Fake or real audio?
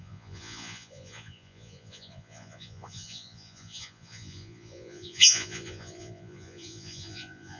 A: fake